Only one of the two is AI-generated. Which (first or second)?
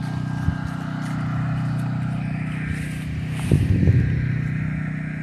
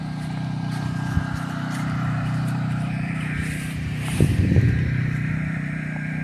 second